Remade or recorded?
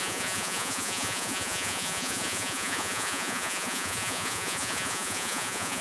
remade